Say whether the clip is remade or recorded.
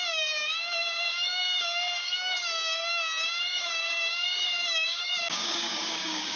remade